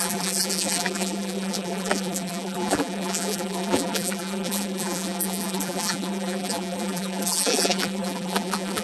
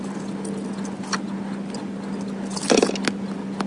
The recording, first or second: second